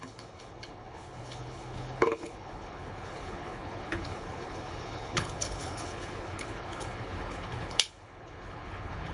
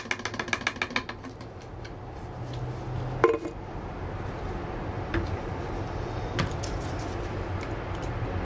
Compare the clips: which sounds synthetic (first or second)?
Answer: first